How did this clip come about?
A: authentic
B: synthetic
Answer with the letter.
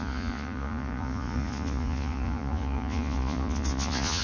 B